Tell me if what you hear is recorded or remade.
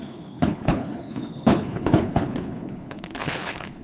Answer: remade